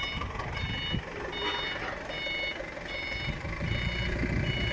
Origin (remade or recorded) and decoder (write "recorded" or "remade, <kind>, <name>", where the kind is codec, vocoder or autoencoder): recorded